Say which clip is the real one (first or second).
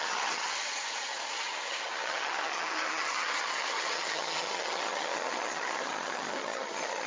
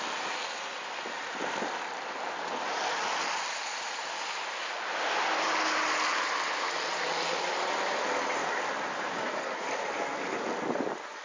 second